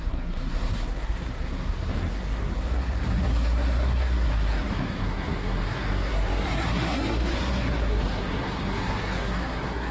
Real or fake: fake